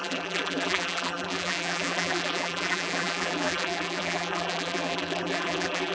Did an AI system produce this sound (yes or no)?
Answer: yes